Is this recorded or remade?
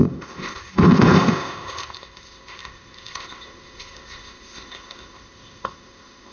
remade